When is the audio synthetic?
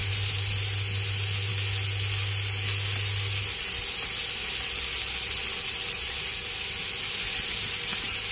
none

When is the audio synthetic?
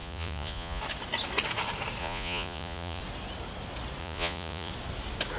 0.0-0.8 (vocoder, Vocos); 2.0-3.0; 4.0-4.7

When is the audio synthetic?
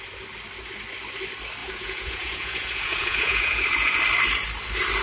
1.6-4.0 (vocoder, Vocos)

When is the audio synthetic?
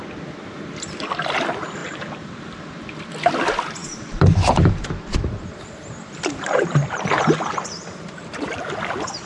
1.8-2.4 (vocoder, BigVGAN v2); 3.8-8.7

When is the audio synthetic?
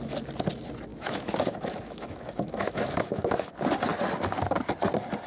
0.9-3.5 (autoencoder, DAC-VAE)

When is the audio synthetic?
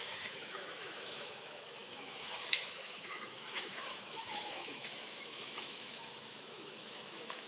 0.0-7.5 (autoencoder, DAC-VAE)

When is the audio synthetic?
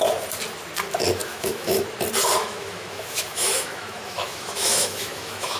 1.2-1.8 (autoencoder, DAC-VAE); 2.4-5.6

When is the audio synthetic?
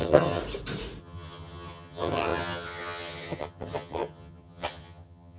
0.0-0.4 (vocoder, HiFi-GAN); 1.0-5.4